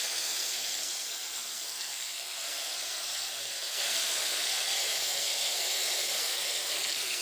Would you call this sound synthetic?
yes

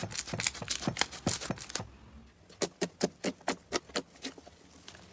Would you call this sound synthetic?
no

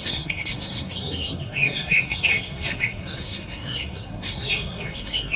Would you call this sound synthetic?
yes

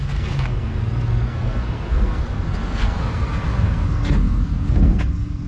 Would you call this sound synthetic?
yes